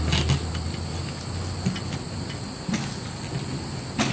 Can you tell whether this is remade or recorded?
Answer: recorded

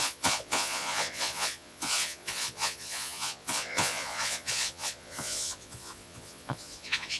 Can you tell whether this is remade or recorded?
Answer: remade